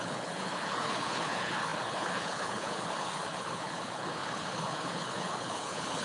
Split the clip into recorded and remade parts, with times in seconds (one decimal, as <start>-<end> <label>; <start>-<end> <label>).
0.0-6.0 remade